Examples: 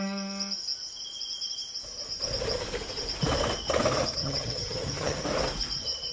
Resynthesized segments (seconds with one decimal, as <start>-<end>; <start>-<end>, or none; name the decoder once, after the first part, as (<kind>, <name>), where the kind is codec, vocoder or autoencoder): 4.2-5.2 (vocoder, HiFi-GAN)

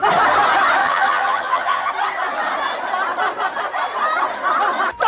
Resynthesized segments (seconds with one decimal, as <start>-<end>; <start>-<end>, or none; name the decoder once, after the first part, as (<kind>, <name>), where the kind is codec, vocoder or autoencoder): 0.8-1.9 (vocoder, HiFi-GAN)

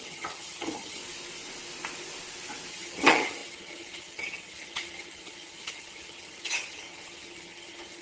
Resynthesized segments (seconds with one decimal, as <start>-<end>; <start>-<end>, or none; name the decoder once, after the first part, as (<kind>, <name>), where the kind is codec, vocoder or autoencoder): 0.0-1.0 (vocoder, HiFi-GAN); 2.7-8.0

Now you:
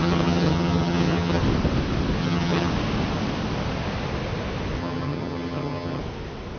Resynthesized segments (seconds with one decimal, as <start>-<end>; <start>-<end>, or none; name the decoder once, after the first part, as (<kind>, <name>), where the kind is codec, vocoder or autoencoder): 0.0-1.4 (vocoder, HiFi-GAN); 2.2-2.7; 4.8-6.0